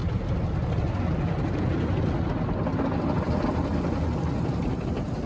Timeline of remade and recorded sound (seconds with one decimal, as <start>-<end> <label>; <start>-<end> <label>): 0.0-5.3 recorded